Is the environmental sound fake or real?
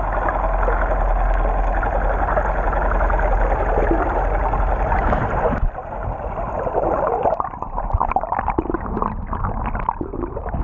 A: real